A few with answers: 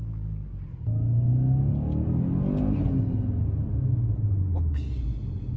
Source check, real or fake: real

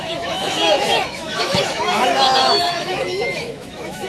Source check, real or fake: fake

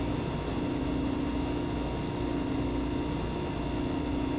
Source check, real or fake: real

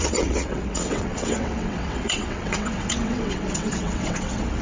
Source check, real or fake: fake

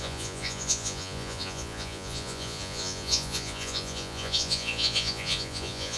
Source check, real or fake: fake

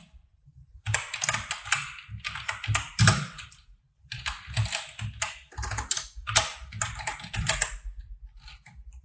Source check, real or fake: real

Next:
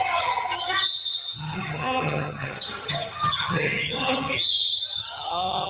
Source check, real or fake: fake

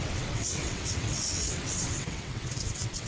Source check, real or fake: fake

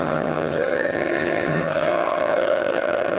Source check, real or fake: fake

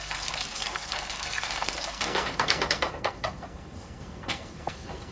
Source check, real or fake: fake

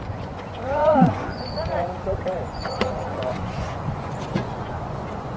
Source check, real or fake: fake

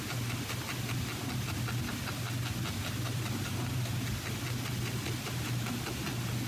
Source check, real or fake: real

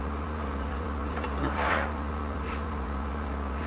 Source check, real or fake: fake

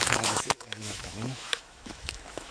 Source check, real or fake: fake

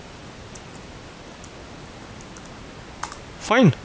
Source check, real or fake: real